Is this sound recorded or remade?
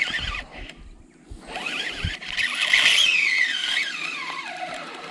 recorded